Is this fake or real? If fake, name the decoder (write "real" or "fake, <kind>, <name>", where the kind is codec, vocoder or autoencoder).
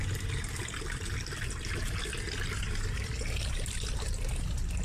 real